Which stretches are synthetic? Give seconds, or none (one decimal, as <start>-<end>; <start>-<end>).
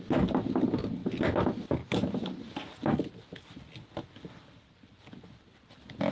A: none